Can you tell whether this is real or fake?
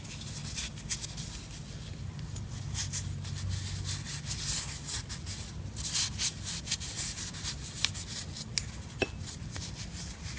real